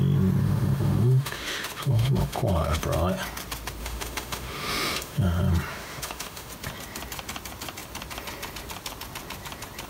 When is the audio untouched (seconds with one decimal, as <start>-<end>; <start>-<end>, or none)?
0.0-0.4; 2.8-3.8; 5.2-5.7; 6.5-9.9